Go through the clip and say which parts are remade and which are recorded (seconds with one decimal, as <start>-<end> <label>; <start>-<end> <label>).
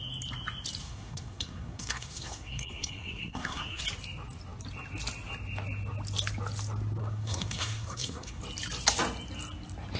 0.0-0.8 recorded; 0.8-3.8 remade; 3.8-7.0 recorded; 7.0-8.4 remade; 8.4-10.0 recorded